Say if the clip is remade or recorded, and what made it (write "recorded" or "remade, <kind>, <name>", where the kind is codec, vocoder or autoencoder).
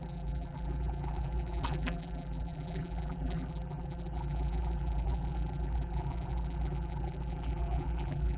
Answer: remade, vocoder, BigVGAN v2